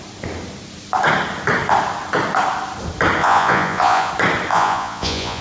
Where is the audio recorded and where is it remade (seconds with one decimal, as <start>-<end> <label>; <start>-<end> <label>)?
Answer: 0.0-3.2 recorded; 3.2-4.1 remade; 4.1-4.5 recorded; 4.5-5.4 remade